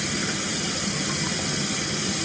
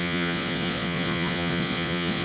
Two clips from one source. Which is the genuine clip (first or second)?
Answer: first